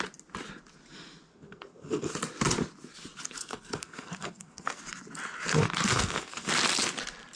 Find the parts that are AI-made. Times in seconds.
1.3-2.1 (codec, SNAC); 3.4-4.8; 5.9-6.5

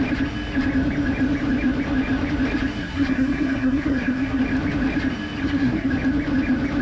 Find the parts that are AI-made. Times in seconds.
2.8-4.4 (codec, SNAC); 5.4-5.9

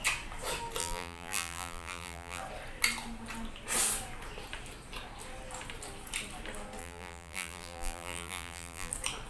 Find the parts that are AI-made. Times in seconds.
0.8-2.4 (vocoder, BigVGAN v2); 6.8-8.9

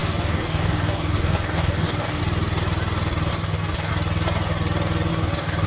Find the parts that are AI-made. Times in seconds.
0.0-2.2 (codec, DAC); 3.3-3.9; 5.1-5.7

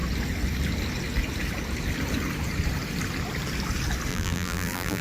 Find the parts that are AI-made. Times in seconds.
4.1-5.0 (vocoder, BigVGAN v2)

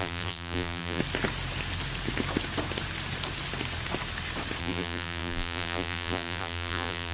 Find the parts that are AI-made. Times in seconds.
0.0-1.0 (vocoder, BigVGAN v2); 4.6-7.1

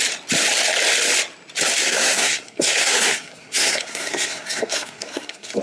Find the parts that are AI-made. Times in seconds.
1.8-5.6 (codec, SNAC)